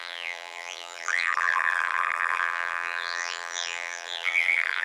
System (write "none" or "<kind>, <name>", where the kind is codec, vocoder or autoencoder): vocoder, BigVGAN v2